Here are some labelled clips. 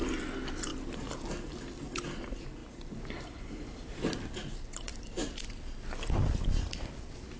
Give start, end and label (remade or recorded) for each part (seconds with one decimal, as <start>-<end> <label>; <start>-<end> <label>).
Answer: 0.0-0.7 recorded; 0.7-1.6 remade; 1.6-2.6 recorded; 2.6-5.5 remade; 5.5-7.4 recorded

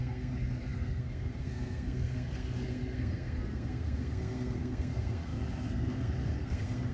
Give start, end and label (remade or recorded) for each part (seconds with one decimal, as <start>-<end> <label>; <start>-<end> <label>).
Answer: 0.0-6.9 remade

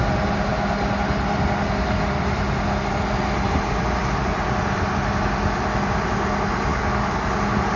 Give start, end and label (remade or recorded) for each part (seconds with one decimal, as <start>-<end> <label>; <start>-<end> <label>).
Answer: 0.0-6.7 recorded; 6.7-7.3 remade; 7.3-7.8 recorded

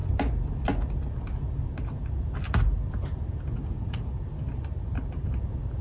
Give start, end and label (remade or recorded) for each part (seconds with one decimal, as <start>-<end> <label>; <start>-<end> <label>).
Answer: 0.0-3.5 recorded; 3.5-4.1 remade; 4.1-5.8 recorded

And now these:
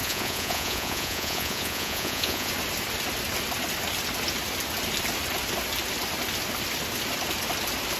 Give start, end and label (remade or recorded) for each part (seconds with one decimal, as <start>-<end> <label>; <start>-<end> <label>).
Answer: 0.0-2.5 remade; 2.5-8.0 recorded

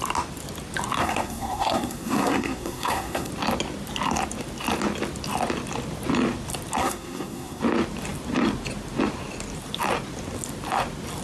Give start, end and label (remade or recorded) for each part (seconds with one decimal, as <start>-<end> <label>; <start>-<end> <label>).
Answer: 0.0-1.0 recorded; 1.0-3.3 remade; 3.3-6.8 recorded; 6.8-7.6 remade; 7.6-11.2 recorded

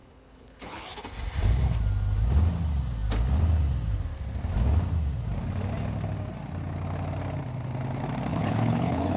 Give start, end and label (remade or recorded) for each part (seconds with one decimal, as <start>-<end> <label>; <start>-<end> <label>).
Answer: 0.0-1.0 remade; 1.0-8.3 recorded; 8.3-9.2 remade

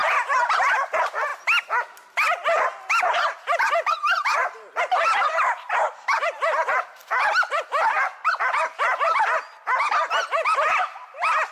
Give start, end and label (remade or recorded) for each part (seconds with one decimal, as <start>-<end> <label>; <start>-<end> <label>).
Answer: 0.0-11.5 recorded